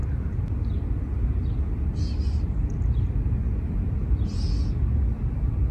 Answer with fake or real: real